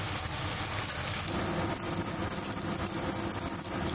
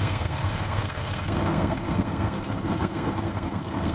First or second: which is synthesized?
second